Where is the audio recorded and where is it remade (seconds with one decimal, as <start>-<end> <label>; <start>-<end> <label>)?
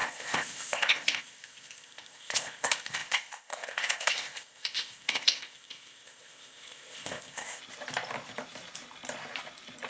0.0-7.6 remade; 7.6-9.9 recorded